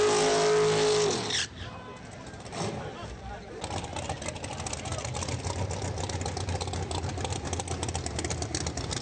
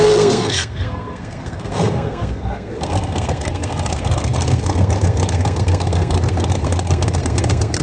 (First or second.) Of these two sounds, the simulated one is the second